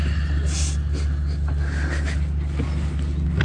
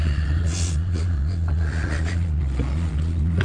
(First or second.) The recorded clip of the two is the first